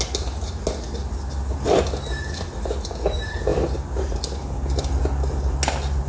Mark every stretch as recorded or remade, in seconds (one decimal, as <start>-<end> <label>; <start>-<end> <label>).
0.0-6.1 recorded

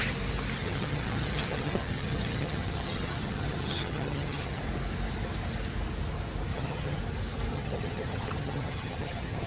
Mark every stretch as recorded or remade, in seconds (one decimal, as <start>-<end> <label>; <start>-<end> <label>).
0.0-0.6 recorded; 0.6-4.6 remade; 4.6-6.5 recorded; 6.5-7.0 remade; 7.0-7.5 recorded; 7.5-9.5 remade